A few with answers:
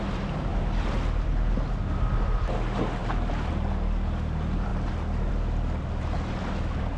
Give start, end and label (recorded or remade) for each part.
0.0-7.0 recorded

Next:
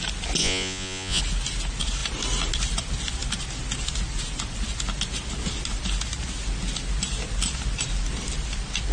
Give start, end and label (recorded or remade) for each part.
0.0-0.4 recorded; 0.4-1.2 remade; 1.2-8.9 recorded

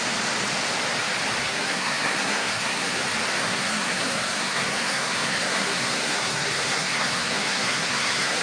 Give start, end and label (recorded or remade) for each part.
0.0-1.4 recorded; 1.4-3.0 remade; 3.0-3.4 recorded; 3.4-8.4 remade

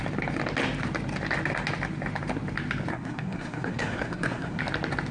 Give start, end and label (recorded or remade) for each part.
0.0-2.9 recorded; 2.9-4.6 remade; 4.6-5.1 recorded